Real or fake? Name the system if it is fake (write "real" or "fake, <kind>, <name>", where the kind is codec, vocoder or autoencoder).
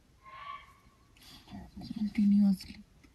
real